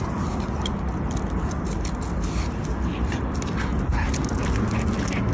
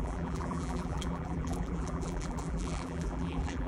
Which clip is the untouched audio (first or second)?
first